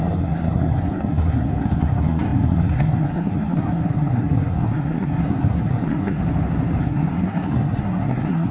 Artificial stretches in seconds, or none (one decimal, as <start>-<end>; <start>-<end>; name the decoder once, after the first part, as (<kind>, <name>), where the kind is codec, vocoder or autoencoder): 0.0-6.2 (codec, SNAC); 6.8-8.5